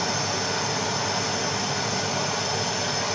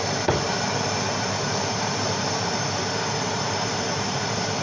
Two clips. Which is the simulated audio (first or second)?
second